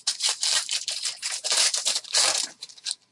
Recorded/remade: remade